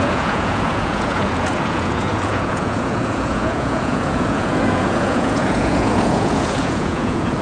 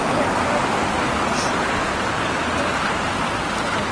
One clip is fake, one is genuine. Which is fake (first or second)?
first